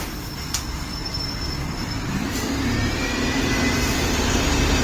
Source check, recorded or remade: remade